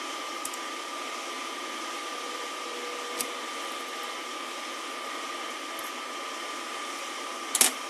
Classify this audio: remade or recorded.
recorded